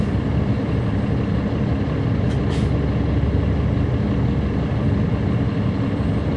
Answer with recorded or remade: recorded